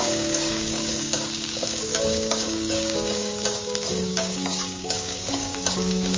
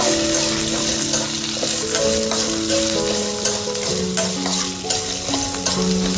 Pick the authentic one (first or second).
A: second